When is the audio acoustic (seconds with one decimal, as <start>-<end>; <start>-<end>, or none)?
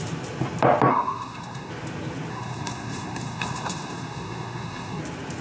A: 0.0-0.9; 1.7-2.3; 5.0-5.4